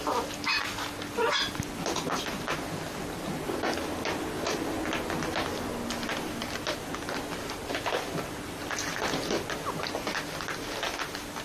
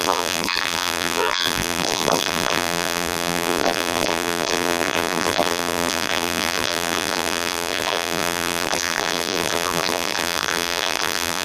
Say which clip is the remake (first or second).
second